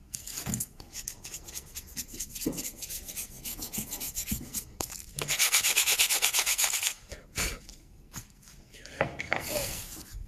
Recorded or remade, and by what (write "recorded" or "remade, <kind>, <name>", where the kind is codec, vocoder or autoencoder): remade, codec, SNAC